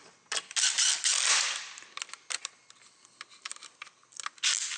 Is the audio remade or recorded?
recorded